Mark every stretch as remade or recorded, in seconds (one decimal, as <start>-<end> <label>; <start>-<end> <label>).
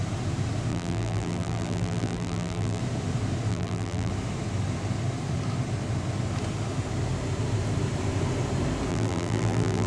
0.0-0.7 recorded; 0.7-2.8 remade; 2.8-3.5 recorded; 3.5-4.1 remade; 4.1-8.9 recorded; 8.9-9.9 remade